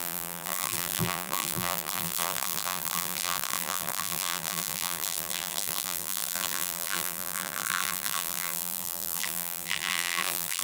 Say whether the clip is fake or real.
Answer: fake